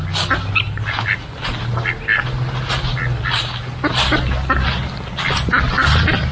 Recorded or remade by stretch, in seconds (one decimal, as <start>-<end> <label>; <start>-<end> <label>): 0.0-6.3 recorded